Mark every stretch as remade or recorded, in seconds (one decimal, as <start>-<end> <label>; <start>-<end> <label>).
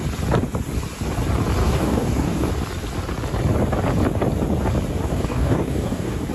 0.0-1.6 recorded; 1.6-2.5 remade; 2.5-5.1 recorded; 5.1-6.3 remade